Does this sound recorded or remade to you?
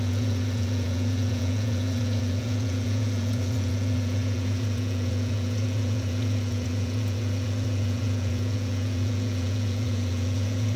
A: remade